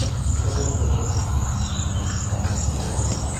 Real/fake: real